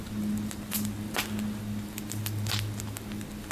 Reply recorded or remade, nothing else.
recorded